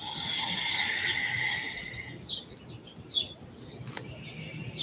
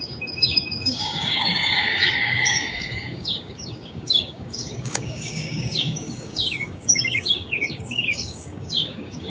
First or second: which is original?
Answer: first